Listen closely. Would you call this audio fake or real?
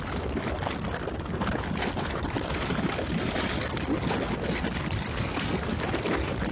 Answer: fake